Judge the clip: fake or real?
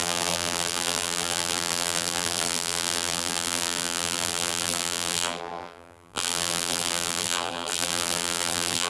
fake